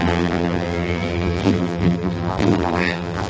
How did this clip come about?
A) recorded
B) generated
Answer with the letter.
B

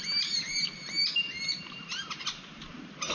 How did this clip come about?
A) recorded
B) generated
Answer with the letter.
B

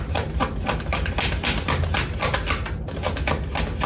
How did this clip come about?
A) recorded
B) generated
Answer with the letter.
A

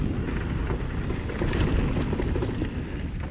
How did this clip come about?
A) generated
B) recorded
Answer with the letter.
B